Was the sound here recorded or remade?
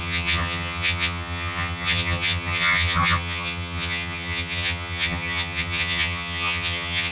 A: remade